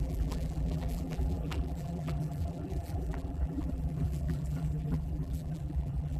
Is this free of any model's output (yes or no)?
no